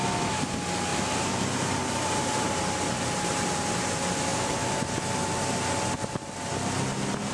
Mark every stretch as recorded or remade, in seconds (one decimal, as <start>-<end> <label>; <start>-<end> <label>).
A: 0.0-0.9 recorded; 0.9-2.6 remade; 2.6-7.3 recorded